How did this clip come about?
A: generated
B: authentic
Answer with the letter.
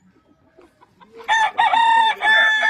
B